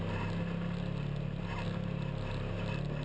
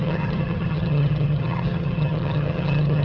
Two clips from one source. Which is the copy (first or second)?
second